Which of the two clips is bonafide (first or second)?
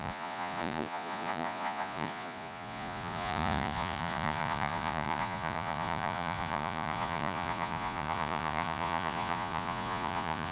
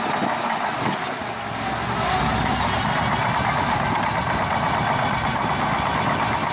second